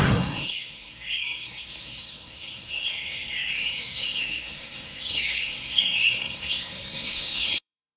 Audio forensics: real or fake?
fake